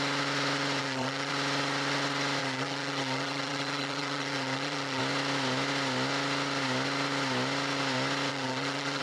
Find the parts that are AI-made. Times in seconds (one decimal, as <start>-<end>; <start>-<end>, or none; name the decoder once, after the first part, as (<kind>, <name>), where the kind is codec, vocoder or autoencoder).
0.8-1.3 (vocoder, BigVGAN v2); 2.4-5.0; 8.3-9.0

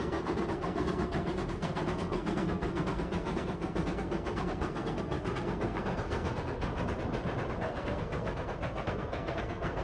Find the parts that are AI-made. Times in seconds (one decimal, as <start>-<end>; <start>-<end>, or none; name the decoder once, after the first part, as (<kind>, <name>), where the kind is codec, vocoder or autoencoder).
0.0-6.7 (codec, SNAC); 7.6-9.8

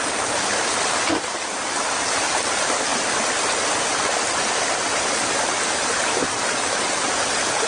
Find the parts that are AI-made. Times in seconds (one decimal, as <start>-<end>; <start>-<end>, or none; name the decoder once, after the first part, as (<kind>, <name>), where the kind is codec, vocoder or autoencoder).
none

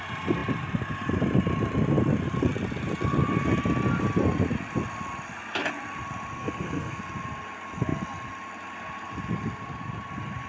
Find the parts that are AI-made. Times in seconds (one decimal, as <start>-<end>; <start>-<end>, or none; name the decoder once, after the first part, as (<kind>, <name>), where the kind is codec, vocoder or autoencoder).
6.4-7.0 (codec, SNAC)

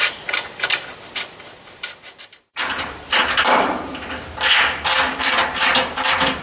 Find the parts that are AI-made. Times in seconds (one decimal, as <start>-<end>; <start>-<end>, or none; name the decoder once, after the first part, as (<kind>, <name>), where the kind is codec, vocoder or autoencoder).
2.2-3.9 (vocoder, BigVGAN v2); 5.0-6.4

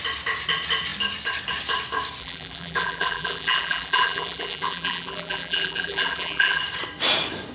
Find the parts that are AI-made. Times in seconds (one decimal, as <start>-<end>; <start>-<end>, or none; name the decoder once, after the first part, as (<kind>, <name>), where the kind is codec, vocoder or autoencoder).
2.2-6.6 (vocoder, BigVGAN v2)